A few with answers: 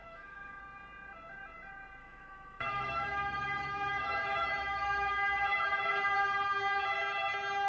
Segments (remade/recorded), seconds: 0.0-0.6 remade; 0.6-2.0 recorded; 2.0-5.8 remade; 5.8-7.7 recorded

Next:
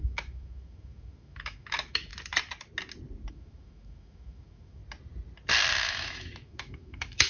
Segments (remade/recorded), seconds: 0.0-2.1 remade; 2.1-3.3 recorded; 3.3-4.8 remade; 4.8-5.7 recorded; 5.7-7.3 remade

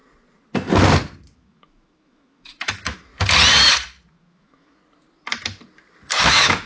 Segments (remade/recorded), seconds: 0.0-1.3 recorded; 1.3-3.1 remade; 3.1-4.1 recorded; 4.1-4.8 remade; 4.8-6.3 recorded; 6.3-6.7 remade